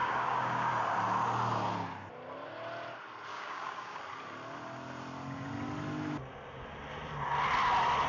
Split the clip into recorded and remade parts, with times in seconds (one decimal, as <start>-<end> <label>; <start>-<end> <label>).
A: 0.0-0.7 remade; 0.7-3.3 recorded; 3.3-4.0 remade; 4.0-8.1 recorded